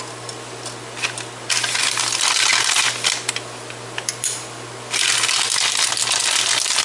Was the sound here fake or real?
real